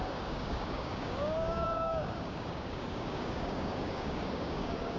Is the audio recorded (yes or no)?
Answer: no